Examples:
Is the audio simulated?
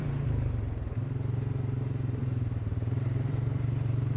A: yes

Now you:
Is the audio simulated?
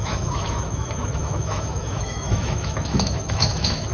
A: yes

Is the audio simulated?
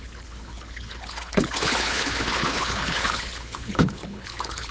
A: yes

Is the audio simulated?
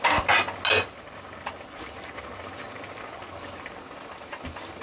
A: no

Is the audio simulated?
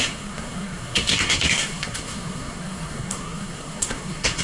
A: yes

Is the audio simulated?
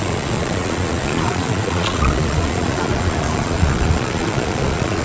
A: yes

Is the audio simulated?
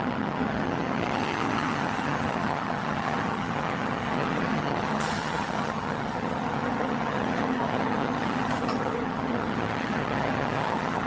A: yes